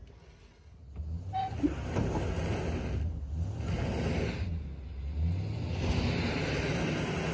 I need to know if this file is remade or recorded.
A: recorded